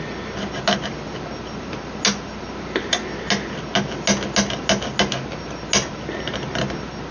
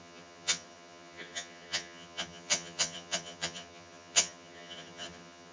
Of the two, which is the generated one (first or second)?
second